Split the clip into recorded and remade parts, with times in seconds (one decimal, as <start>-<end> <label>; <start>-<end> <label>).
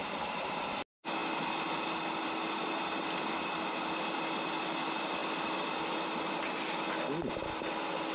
0.0-5.2 recorded; 5.2-6.0 remade; 6.0-8.1 recorded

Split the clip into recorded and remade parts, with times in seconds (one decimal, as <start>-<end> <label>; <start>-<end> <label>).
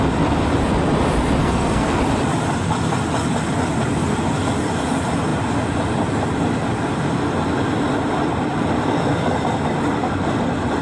0.0-1.4 recorded; 1.4-2.0 remade; 2.0-10.8 recorded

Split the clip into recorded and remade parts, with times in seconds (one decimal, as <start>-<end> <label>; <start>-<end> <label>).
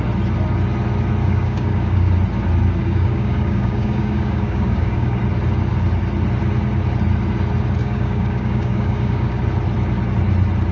0.0-1.2 recorded; 1.2-2.1 remade; 2.1-2.8 recorded; 2.8-5.2 remade; 5.2-7.8 recorded; 7.8-9.4 remade; 9.4-10.7 recorded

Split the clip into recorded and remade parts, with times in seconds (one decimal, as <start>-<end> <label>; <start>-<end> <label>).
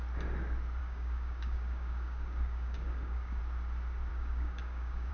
0.0-0.8 recorded; 0.8-3.4 remade; 3.4-4.1 recorded; 4.1-5.1 remade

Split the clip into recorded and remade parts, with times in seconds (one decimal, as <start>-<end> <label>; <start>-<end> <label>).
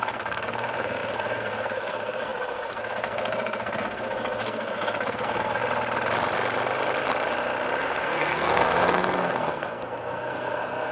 0.0-5.6 remade; 5.6-7.8 recorded; 7.8-10.9 remade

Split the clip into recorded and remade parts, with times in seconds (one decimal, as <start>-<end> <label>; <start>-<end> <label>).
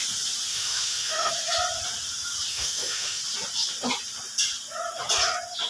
0.0-0.5 recorded; 0.5-1.3 remade; 1.3-2.5 recorded; 2.5-3.2 remade; 3.2-5.7 recorded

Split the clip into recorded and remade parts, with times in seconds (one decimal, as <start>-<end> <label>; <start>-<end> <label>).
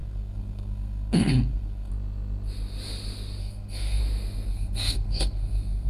0.0-1.9 remade; 1.9-3.4 recorded; 3.4-4.0 remade; 4.0-4.5 recorded; 4.5-5.9 remade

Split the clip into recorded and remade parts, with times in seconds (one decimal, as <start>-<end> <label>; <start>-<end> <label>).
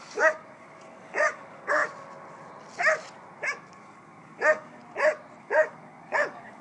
0.0-1.8 remade; 1.8-3.5 recorded; 3.5-4.8 remade; 4.8-5.4 recorded; 5.4-6.6 remade